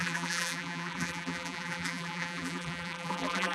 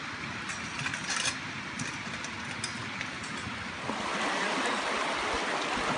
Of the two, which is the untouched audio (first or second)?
second